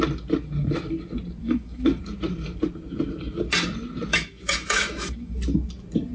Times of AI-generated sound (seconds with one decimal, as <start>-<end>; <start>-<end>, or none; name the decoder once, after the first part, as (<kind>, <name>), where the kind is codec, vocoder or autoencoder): 1.4-2.0 (autoencoder, DAC-VAE); 4.1-5.4